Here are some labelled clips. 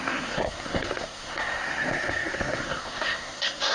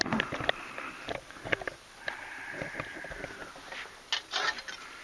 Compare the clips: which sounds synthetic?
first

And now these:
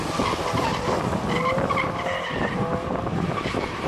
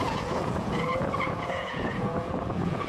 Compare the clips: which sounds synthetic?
second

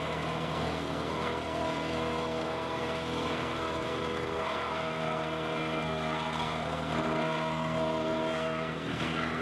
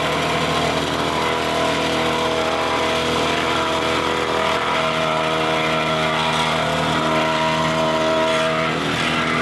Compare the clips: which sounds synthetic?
first